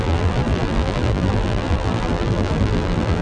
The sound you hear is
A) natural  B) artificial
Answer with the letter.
B